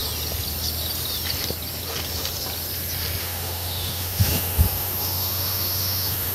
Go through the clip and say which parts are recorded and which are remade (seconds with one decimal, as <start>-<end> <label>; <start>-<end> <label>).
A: 0.0-3.2 recorded; 3.2-6.3 remade